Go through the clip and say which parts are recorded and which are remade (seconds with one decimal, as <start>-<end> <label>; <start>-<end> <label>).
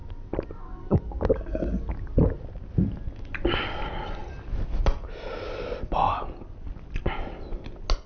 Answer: 0.0-8.1 recorded